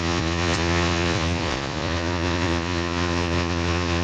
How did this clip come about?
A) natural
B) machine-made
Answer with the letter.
B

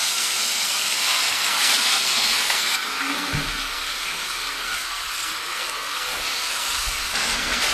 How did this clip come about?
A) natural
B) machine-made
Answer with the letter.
B